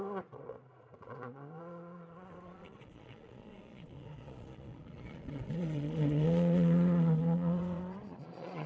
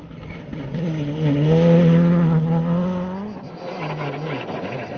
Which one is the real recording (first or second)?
second